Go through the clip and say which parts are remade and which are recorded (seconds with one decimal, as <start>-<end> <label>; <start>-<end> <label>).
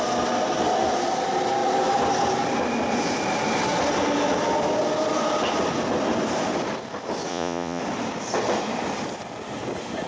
0.0-7.3 recorded; 7.3-7.8 remade; 7.8-10.1 recorded